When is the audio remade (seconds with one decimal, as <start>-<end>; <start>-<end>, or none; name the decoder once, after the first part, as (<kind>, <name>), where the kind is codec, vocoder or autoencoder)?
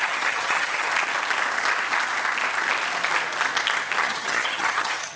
0.0-0.9 (vocoder, HiFi-GAN); 4.0-5.2